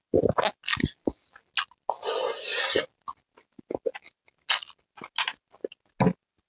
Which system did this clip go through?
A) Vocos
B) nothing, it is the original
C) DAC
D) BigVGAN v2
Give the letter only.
B